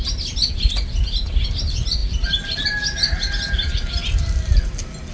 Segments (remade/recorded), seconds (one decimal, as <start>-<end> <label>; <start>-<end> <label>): 0.0-5.1 recorded